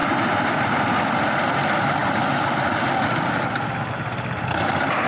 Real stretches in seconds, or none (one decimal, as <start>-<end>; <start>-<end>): none